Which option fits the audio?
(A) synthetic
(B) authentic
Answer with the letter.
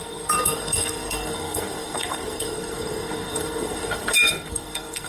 A